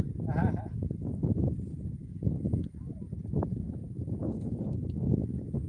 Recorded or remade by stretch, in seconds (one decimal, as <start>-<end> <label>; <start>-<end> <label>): 0.0-0.4 recorded; 0.4-1.5 remade; 1.5-2.0 recorded; 2.0-2.9 remade; 2.9-4.2 recorded; 4.2-5.3 remade; 5.3-5.7 recorded